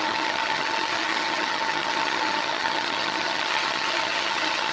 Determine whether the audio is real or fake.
fake